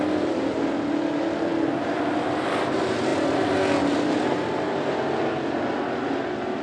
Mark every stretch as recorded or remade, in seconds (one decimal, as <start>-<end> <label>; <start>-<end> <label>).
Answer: 0.0-6.6 recorded